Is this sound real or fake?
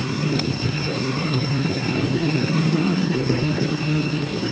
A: fake